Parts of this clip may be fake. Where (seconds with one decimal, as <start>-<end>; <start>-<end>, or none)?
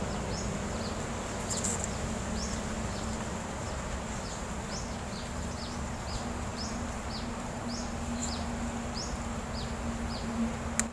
none